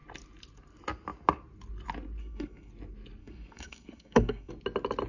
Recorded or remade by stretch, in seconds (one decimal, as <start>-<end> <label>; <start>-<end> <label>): 0.0-2.2 recorded; 2.2-2.7 remade; 2.7-3.2 recorded; 3.2-4.5 remade; 4.5-5.1 recorded